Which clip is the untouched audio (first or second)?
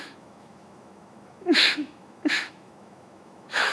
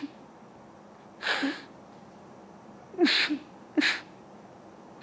second